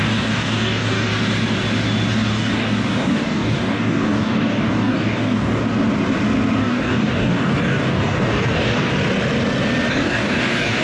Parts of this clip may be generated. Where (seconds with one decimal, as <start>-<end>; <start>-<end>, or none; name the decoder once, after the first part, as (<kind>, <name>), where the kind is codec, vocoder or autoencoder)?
0.0-1.1 (codec, DAC); 2.1-5.6; 6.6-8.9; 9.9-10.8